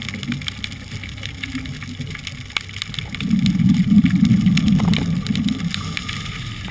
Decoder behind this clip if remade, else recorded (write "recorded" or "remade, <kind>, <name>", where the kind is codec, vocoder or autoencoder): recorded